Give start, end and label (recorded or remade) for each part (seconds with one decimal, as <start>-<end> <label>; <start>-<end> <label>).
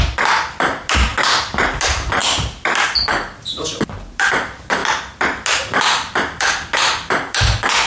0.0-7.9 recorded